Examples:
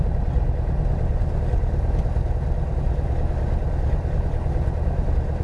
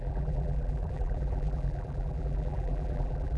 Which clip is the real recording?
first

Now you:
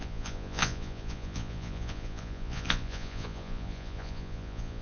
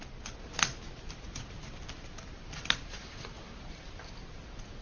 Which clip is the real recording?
second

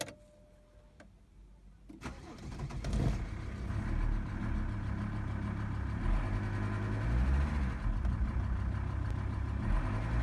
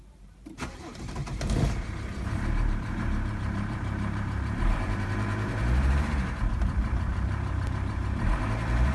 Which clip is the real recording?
first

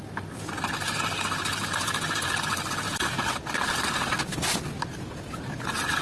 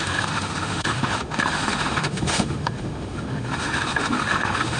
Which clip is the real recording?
first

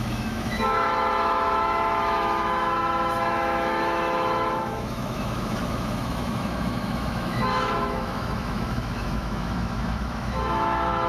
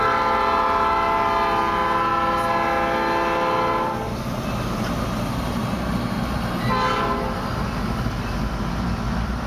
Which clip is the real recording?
second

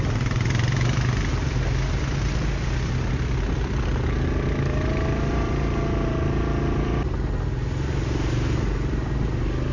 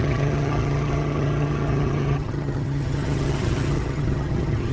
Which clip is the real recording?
first